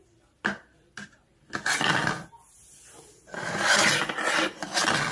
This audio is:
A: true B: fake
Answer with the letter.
A